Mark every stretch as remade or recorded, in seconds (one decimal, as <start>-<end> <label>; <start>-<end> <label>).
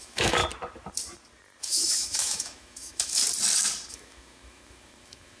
0.0-0.4 remade; 0.4-1.6 recorded; 1.6-3.2 remade; 3.2-3.9 recorded; 3.9-5.4 remade